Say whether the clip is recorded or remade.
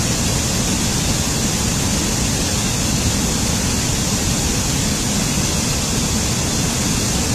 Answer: recorded